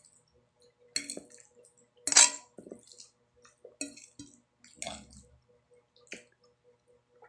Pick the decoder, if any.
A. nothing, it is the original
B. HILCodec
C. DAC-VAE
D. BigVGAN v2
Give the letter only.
A